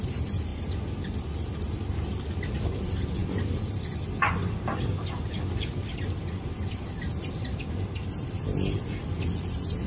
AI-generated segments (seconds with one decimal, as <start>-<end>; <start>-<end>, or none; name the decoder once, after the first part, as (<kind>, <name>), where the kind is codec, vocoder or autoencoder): 0.0-0.5 (vocoder, BigVGAN v2); 2.4-3.2; 5.9-9.9